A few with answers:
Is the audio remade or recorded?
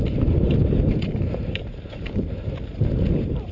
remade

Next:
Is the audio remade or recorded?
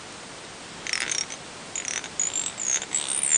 recorded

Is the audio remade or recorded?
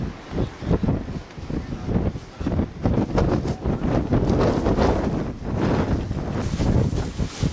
recorded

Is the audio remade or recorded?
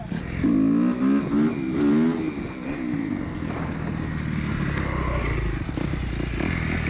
recorded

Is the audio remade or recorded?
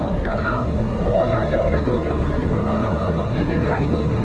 remade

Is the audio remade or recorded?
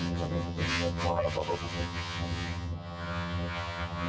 remade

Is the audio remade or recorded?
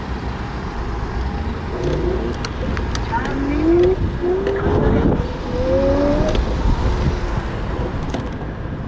recorded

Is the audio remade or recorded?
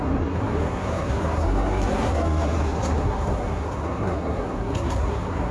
remade